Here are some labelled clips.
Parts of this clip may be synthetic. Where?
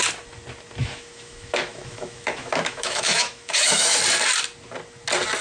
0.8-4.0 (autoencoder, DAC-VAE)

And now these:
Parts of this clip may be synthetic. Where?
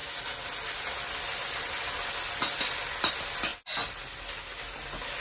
none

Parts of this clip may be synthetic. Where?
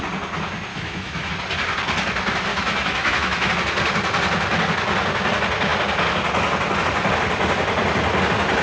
0.7-1.3 (autoencoder, DAC-VAE); 2.5-3.5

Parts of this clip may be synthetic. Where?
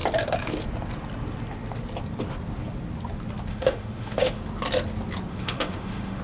3.5-4.4 (autoencoder, DAC-VAE); 5.3-6.2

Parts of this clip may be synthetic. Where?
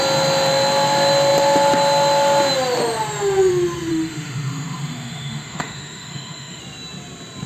3.9-6.6 (autoencoder, DAC-VAE)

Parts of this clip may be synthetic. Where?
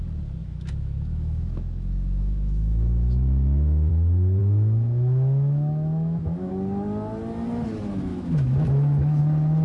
0.4-3.9 (autoencoder, DAC-VAE); 4.4-6.5; 8.1-9.2